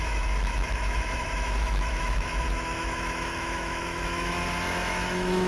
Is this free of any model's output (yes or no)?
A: no